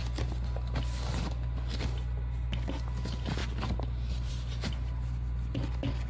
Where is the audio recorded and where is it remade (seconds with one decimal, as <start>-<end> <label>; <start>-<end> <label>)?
0.0-6.1 recorded